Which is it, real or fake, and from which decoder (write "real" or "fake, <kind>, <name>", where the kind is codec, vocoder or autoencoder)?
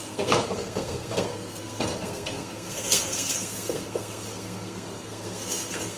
fake, codec, SNAC